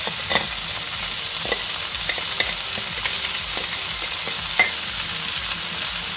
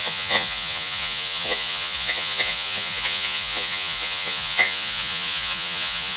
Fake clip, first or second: second